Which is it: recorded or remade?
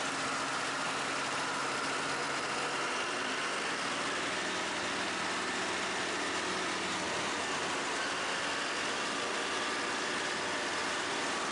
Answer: recorded